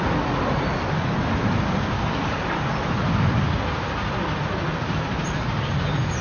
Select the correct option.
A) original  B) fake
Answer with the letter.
A